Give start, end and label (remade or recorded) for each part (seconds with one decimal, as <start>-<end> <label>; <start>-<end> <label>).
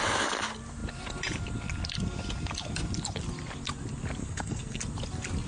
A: 0.0-4.2 recorded; 4.2-4.8 remade; 4.8-5.5 recorded